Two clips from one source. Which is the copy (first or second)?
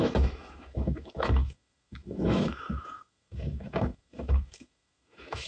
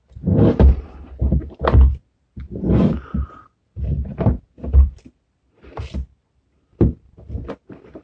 first